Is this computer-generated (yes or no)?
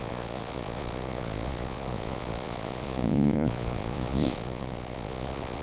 yes